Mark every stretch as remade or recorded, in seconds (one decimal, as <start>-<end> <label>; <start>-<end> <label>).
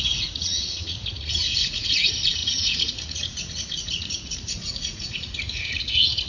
0.0-6.3 remade